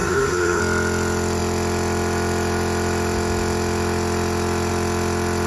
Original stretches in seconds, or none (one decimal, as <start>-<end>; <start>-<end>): 0.6-5.5